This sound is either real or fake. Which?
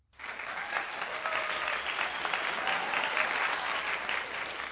real